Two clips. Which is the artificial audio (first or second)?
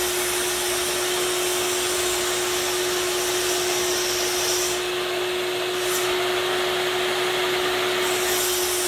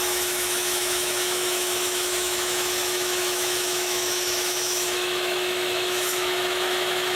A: second